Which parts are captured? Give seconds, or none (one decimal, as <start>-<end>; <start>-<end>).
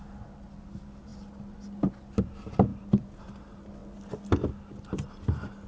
0.0-5.7